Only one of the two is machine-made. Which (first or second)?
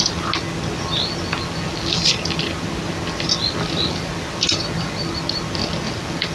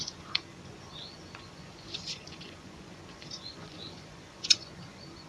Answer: second